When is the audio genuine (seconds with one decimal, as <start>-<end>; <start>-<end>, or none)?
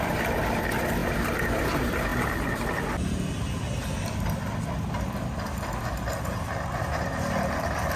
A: 0.0-8.0